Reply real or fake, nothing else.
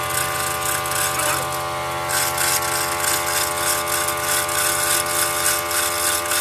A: real